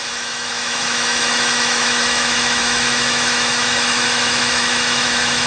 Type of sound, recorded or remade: remade